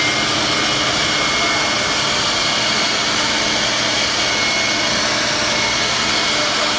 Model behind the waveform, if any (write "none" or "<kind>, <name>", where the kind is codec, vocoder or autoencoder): none